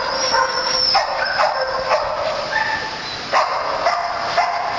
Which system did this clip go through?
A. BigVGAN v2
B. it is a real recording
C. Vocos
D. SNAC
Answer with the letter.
B